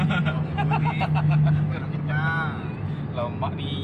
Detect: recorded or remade recorded